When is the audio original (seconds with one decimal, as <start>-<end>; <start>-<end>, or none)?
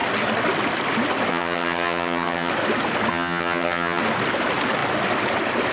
0.0-1.3; 2.5-3.1; 4.0-5.7